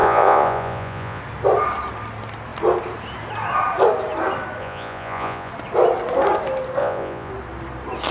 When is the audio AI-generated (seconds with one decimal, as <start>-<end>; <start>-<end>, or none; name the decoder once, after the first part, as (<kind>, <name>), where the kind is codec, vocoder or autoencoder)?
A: 0.0-1.2 (vocoder, Vocos); 4.6-5.5; 6.8-7.3